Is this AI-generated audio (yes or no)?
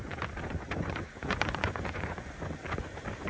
yes